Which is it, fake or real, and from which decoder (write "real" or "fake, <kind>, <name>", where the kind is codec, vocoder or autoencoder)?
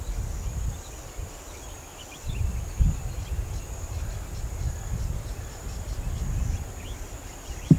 real